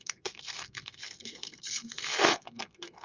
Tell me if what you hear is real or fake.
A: fake